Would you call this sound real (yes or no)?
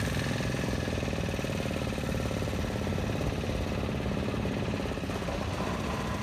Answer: yes